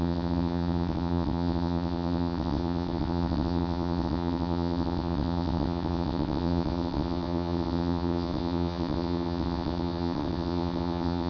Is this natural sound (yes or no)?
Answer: no